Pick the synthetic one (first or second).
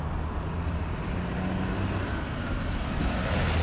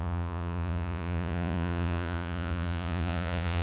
second